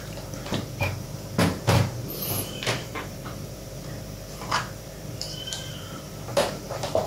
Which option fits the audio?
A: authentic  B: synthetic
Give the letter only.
B